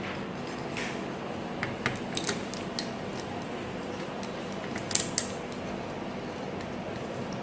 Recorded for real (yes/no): yes